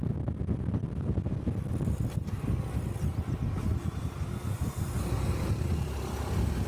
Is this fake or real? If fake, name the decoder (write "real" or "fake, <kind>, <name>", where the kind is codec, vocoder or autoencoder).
real